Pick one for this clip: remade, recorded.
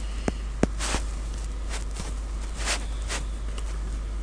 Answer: recorded